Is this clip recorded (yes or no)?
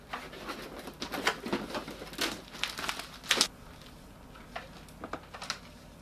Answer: yes